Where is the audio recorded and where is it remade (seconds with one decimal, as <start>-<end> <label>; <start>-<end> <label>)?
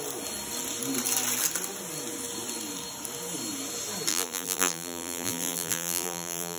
0.0-4.1 recorded; 4.1-6.6 remade